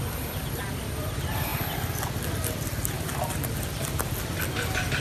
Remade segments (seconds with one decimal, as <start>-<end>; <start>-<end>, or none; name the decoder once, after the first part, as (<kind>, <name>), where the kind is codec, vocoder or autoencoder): none